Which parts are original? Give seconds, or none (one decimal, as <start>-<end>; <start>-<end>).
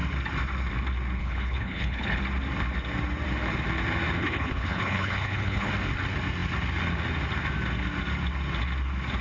0.0-1.2; 2.2-4.2; 5.7-9.2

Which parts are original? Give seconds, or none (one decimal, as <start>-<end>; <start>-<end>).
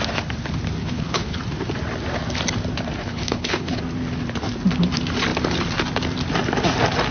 0.0-0.8; 1.4-3.0; 3.8-7.1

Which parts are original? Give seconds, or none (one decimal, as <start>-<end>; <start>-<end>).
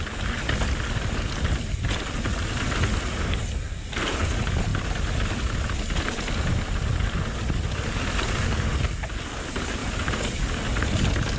0.0-11.4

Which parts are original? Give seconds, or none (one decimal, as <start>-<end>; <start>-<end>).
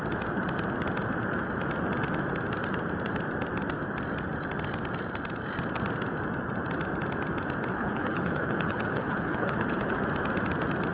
0.0-7.7; 10.0-10.9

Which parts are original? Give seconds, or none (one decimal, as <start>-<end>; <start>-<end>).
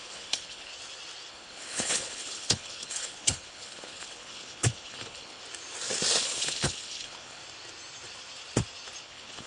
0.7-1.3; 5.4-6.2; 7.4-9.0